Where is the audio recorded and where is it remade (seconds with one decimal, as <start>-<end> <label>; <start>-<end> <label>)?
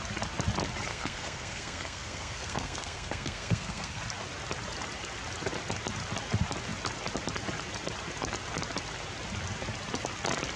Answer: 0.0-0.9 recorded; 0.9-4.0 remade; 4.0-10.6 recorded